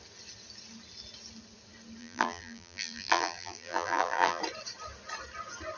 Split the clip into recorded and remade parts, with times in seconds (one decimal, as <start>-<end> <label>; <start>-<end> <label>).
0.0-2.0 recorded; 2.0-4.4 remade; 4.4-5.8 recorded